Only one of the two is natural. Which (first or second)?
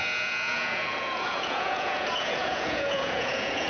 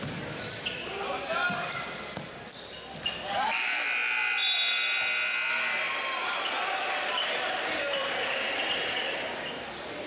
second